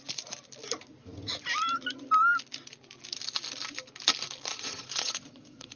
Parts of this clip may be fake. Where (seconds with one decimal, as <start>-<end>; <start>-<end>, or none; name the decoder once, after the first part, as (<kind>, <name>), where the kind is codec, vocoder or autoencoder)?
4.5-5.8 (vocoder, Vocos)